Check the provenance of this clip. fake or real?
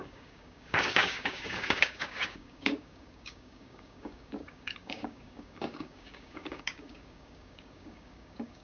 fake